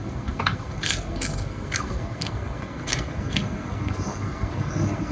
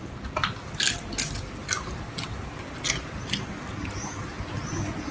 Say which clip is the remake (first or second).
first